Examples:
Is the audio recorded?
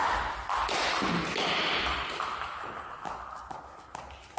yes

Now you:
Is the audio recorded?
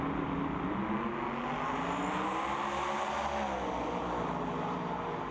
yes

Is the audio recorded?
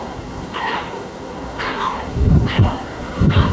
no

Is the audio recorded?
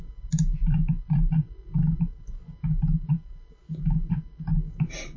yes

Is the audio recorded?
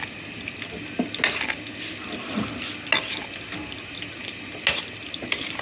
yes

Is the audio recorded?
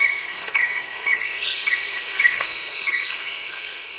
no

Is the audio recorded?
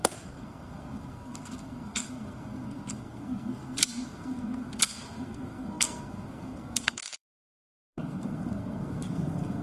no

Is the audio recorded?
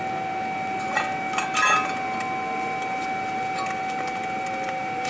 yes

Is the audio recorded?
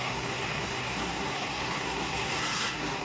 no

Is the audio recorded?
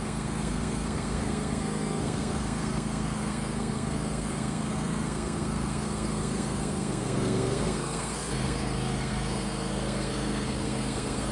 no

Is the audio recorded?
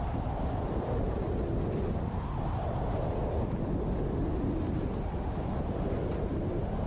yes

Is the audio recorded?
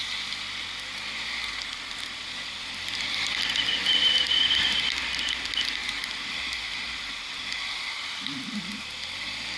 yes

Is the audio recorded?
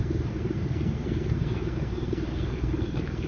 no